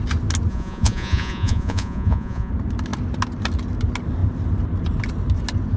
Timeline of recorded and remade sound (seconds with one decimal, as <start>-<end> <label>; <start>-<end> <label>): 0.0-0.5 recorded; 0.5-2.5 remade; 2.5-5.8 recorded